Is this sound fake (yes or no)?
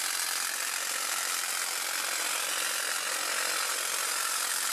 no